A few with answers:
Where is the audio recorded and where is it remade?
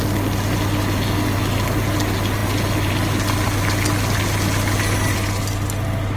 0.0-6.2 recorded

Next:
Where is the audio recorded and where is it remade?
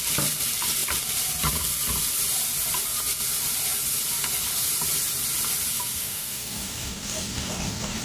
0.0-6.0 recorded; 6.0-8.0 remade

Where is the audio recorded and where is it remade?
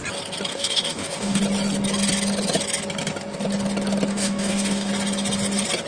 0.0-0.5 recorded; 0.5-1.4 remade; 1.4-4.1 recorded; 4.1-4.9 remade; 4.9-5.9 recorded